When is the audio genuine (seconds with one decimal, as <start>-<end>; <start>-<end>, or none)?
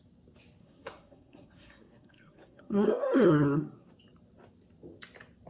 0.0-0.6; 3.9-5.5